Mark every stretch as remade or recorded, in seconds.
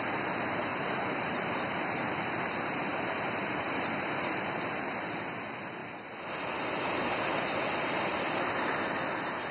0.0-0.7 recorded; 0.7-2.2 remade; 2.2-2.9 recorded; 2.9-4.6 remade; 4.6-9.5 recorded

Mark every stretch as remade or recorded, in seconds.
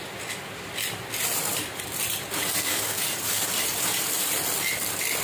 0.0-2.6 recorded; 2.6-3.5 remade; 3.5-5.2 recorded